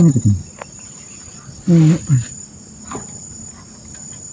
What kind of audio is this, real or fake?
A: real